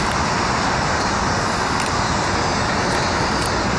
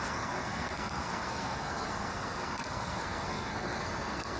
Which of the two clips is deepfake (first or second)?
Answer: second